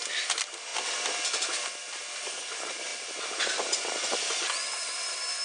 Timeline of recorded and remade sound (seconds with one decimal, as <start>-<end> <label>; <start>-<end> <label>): 0.0-5.4 recorded